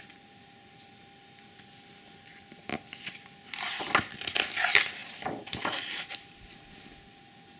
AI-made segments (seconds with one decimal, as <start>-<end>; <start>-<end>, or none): none